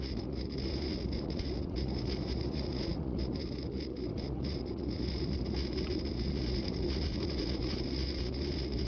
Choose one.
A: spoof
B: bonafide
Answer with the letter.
A